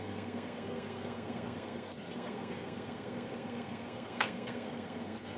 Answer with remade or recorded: remade